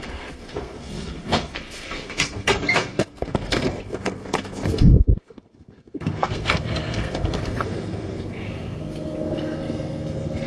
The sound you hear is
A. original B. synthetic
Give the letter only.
B